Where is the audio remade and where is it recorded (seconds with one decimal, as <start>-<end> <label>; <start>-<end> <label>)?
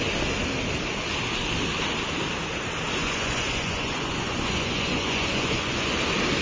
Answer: 0.0-3.0 recorded; 3.0-5.9 remade; 5.9-6.4 recorded